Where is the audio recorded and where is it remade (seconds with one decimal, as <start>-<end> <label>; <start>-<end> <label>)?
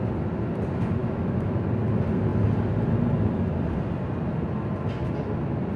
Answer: 0.0-1.0 recorded; 1.0-1.6 remade; 1.6-5.8 recorded